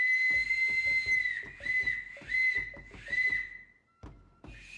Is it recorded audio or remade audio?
recorded